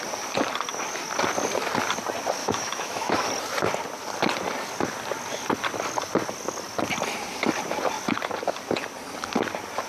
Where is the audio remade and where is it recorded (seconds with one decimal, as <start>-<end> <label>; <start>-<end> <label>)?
0.0-2.4 recorded; 2.4-3.3 remade; 3.3-9.9 recorded